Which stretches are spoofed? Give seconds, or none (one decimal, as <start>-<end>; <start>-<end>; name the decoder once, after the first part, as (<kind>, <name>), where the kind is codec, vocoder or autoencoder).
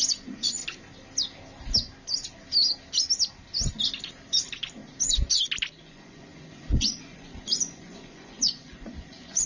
0.0-0.6 (vocoder, Vocos); 5.8-9.5